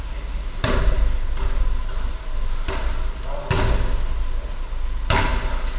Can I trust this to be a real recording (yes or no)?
yes